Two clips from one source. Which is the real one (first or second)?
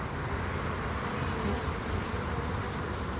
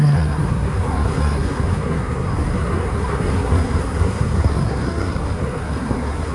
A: first